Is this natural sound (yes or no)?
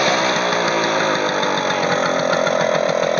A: yes